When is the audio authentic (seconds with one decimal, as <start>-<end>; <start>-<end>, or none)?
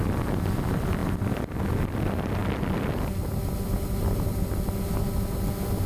0.0-5.9